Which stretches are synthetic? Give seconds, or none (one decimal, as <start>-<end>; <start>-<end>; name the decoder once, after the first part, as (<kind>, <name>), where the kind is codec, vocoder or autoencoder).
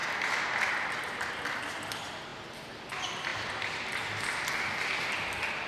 none